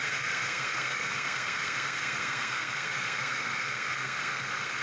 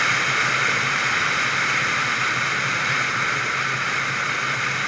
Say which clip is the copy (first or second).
first